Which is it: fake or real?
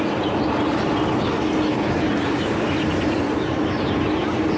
real